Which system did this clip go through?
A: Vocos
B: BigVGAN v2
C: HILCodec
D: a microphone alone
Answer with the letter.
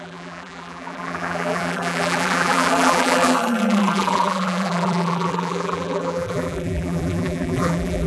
B